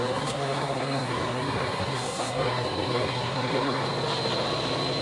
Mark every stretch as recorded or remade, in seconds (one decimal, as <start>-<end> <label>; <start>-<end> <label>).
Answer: 0.0-3.8 remade; 3.8-5.0 recorded